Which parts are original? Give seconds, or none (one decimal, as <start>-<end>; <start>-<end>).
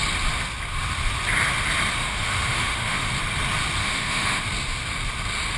0.0-2.0; 3.1-3.8; 4.4-5.6